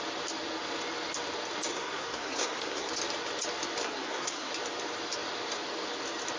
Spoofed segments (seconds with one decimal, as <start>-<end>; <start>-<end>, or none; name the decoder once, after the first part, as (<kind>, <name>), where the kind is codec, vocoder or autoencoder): 1.7-2.9 (codec, SNAC); 3.8-4.5